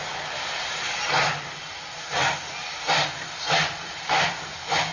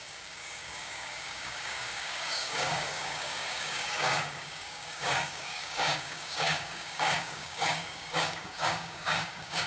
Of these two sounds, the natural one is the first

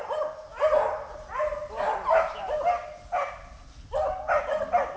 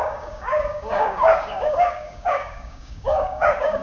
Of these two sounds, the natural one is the first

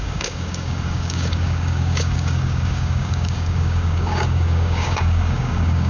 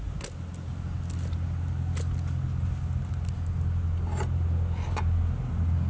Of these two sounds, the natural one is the second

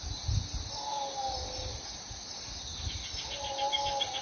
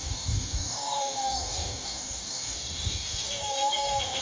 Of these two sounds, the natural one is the first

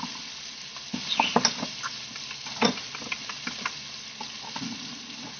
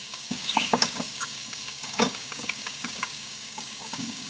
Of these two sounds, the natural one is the first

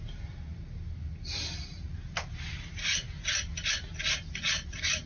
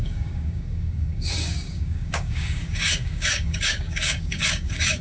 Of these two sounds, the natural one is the first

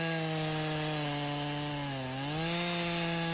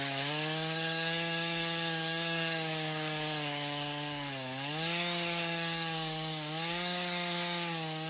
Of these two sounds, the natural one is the first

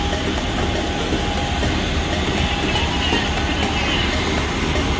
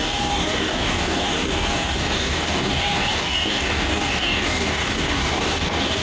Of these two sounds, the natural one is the first